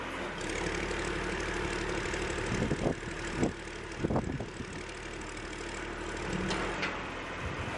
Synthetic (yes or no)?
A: no